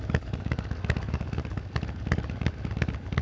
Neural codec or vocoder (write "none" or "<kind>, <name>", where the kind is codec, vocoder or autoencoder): codec, DAC